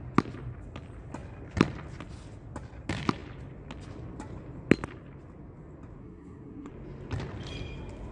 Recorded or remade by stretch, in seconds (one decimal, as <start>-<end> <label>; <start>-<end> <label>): 0.0-6.0 recorded; 6.0-6.7 remade; 6.7-8.1 recorded